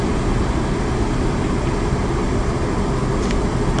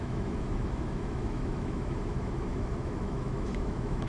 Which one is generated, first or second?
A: second